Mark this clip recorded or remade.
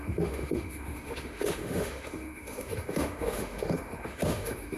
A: remade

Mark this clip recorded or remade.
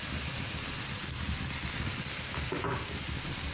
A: recorded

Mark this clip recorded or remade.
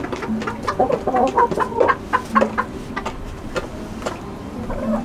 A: recorded